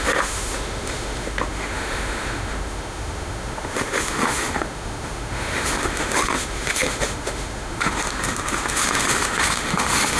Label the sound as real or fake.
fake